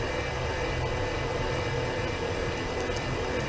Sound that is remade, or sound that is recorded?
recorded